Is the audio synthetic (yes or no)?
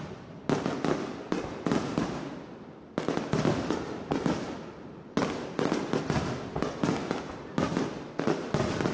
no